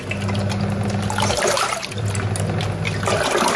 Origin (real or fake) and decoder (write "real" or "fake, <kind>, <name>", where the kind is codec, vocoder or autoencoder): real